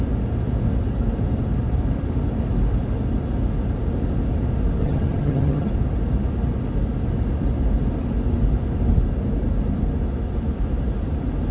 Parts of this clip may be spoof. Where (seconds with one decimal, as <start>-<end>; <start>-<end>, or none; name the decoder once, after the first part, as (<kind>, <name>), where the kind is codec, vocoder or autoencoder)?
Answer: 4.8-5.7 (vocoder, HiFi-GAN)